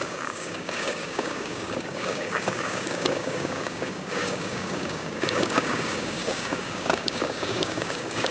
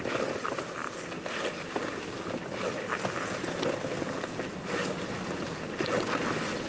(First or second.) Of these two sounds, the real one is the second